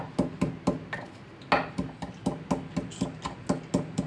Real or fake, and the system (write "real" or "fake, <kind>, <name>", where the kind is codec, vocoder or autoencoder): real